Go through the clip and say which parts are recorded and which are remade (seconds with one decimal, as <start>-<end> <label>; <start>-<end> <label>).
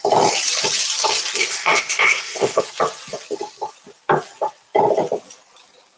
0.0-1.4 recorded; 1.4-2.6 remade; 2.6-6.0 recorded